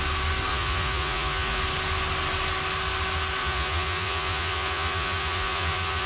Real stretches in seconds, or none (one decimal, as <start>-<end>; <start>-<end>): 0.0-0.5; 1.6-3.4